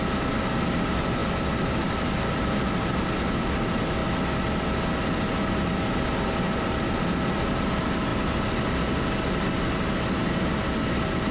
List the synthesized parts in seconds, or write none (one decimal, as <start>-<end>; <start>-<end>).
none